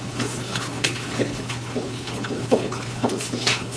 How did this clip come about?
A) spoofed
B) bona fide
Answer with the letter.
A